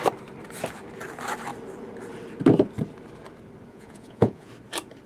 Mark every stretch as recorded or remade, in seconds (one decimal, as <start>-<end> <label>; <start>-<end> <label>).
0.0-3.7 recorded; 3.7-4.5 remade; 4.5-5.1 recorded